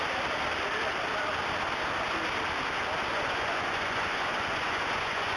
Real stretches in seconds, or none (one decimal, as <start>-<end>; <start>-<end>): 0.0-3.1